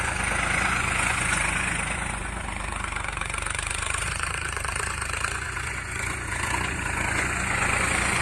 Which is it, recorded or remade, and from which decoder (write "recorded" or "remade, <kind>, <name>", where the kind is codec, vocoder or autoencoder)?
remade, vocoder, Vocos